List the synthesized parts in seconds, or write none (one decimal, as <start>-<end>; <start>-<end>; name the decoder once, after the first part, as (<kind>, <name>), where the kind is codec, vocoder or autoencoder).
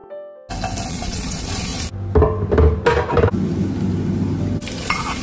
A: 0.9-1.7 (vocoder, Vocos); 4.8-5.2